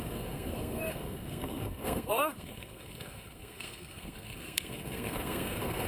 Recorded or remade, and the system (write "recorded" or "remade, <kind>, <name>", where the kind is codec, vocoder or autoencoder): remade, codec, SNAC